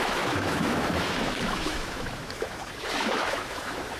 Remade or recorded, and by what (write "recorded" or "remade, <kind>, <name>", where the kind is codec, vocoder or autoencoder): remade, autoencoder, DAC-VAE